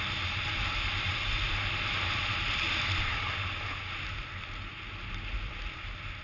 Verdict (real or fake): real